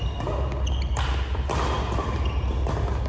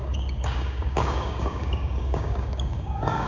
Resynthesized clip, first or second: second